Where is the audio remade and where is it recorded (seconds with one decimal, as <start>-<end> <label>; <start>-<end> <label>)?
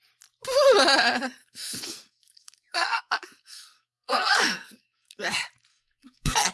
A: 0.0-1.4 recorded; 1.4-5.2 remade; 5.2-5.7 recorded; 5.7-6.5 remade